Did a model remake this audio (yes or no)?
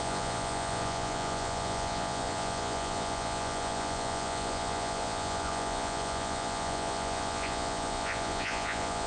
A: yes